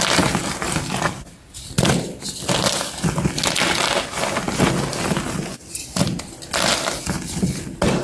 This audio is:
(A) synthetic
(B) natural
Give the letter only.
B